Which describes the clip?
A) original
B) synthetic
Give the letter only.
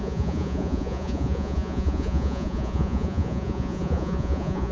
B